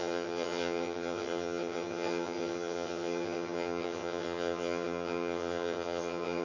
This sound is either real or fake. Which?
fake